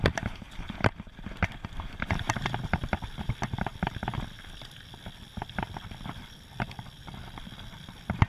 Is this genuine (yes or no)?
no